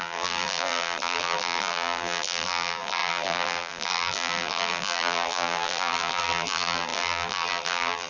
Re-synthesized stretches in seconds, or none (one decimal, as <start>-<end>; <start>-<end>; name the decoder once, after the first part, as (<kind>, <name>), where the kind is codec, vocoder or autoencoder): 0.0-8.1 (vocoder, BigVGAN v2)